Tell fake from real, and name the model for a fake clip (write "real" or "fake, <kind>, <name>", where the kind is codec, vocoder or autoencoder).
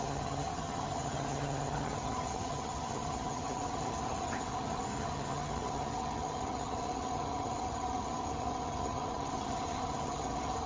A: fake, vocoder, HiFi-GAN